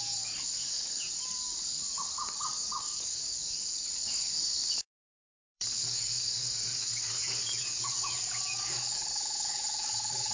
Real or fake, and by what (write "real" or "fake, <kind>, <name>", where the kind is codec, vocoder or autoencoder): fake, codec, DAC